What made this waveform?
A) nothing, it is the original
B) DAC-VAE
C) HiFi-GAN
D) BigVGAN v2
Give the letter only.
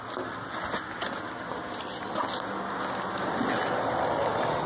A